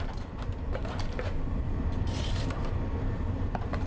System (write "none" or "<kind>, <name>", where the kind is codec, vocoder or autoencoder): vocoder, BigVGAN v2